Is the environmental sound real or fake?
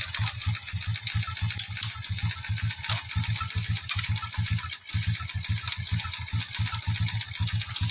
real